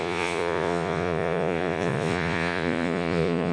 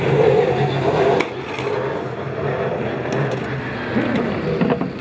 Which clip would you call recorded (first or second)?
second